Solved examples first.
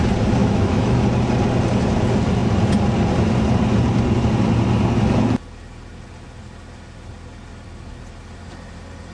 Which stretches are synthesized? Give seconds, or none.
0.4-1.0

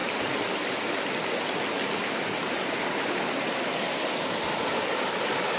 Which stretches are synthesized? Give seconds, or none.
none

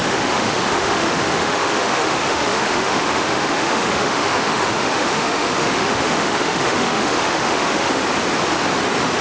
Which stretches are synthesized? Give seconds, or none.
0.0-8.0